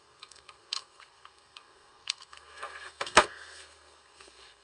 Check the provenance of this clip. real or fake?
fake